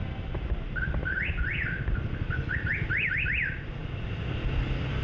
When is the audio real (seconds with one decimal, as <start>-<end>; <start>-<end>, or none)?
0.0-1.0; 2.0-5.0

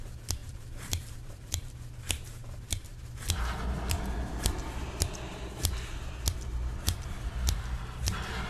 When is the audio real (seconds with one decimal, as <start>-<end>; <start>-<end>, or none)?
2.9-6.8

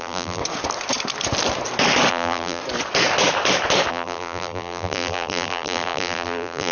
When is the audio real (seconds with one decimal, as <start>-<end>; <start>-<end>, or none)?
0.4-2.1; 2.6-3.9

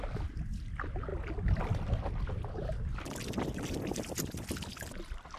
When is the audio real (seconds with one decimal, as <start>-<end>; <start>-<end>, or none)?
0.0-5.4

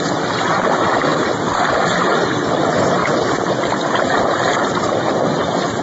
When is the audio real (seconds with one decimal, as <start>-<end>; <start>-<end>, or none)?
0.0-1.1; 1.8-3.0; 5.3-5.8

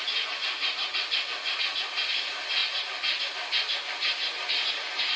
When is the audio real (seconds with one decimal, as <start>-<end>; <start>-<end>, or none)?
0.0-5.2

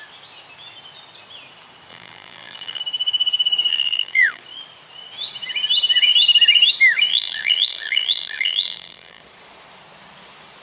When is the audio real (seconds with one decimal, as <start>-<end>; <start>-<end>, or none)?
0.0-1.9; 2.8-3.7; 4.4-7.1; 9.2-10.6

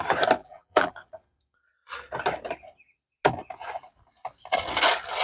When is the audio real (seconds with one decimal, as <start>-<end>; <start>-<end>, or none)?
0.0-0.4; 0.9-5.2